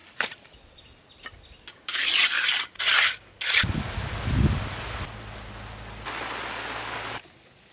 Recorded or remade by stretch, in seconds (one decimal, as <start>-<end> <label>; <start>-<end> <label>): 0.0-0.8 remade; 0.8-7.7 recorded